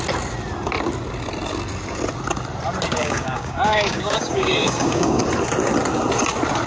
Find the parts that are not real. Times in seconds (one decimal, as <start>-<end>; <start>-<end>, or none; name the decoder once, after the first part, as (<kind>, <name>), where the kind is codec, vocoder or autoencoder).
3.0-5.2 (codec, DAC)